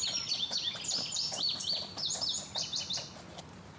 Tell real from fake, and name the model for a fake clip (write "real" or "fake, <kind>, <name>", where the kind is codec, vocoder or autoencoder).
real